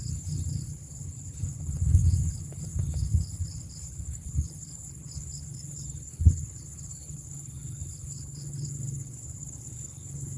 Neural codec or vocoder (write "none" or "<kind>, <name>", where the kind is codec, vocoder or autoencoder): codec, HILCodec